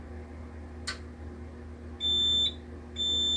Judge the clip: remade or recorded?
recorded